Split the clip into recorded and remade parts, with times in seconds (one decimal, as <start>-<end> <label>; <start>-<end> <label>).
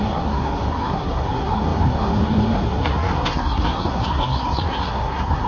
0.0-5.5 remade